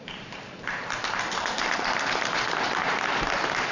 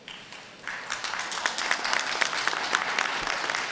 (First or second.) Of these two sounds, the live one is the second